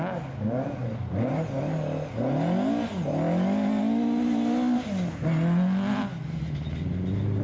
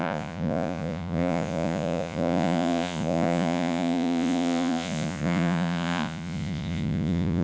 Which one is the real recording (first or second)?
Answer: first